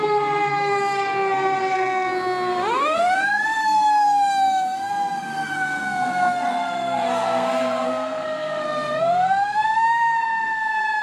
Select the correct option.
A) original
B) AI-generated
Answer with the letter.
B